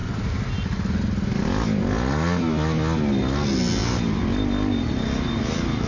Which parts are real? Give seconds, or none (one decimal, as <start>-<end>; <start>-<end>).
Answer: 0.0-5.9